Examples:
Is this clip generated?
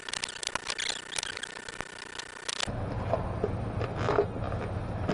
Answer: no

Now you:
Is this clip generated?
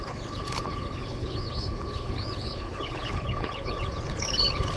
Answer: yes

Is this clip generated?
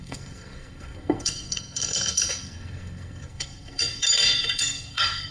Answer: yes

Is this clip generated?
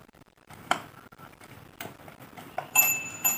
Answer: yes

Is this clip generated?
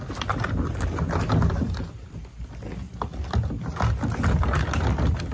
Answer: no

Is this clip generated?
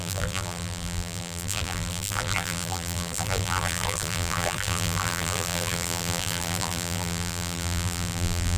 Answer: yes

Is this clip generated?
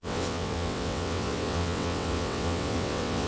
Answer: yes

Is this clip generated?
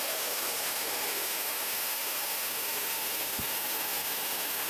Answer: yes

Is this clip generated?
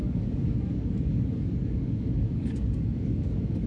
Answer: yes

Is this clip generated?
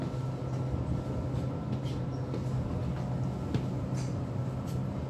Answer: no